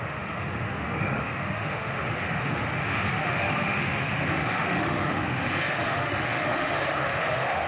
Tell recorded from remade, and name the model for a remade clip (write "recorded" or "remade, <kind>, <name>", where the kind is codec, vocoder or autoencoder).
remade, autoencoder, DAC-VAE